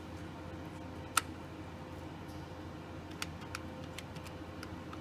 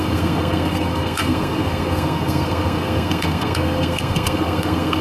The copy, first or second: second